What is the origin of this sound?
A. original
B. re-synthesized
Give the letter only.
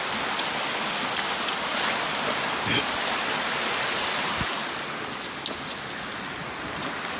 A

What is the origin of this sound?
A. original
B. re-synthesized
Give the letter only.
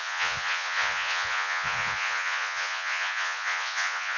B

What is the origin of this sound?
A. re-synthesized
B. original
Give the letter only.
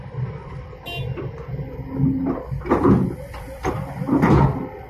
B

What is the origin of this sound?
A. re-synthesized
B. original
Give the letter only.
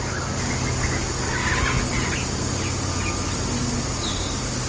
B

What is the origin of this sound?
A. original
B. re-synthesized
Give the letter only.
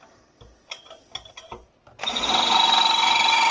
A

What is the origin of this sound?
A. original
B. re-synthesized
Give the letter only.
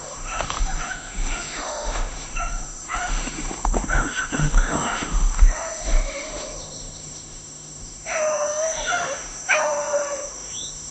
B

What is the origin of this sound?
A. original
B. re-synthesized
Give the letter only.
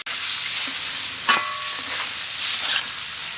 A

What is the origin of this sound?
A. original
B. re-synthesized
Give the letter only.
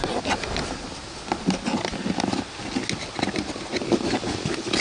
A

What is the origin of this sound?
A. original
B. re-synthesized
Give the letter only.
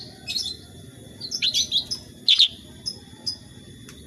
A